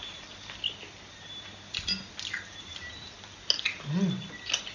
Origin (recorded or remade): recorded